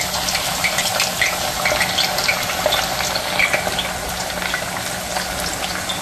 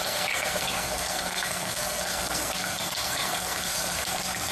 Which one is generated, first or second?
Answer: second